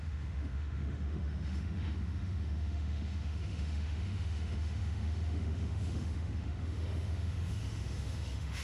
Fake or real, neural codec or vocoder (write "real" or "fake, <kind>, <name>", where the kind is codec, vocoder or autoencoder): fake, autoencoder, DAC-VAE